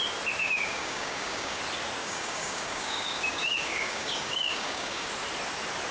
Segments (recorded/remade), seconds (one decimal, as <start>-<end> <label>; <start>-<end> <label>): 0.0-0.4 recorded; 0.4-1.6 remade; 1.6-2.0 recorded; 2.0-5.1 remade; 5.1-5.9 recorded